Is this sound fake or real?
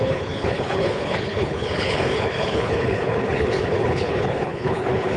fake